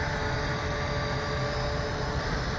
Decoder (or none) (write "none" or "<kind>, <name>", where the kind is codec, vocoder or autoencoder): none